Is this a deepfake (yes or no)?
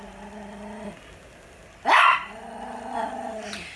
no